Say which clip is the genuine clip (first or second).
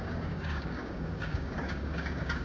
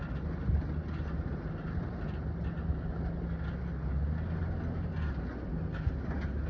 second